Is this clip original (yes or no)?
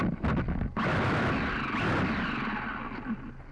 yes